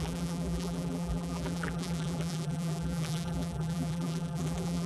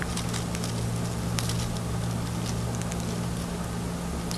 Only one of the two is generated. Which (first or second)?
first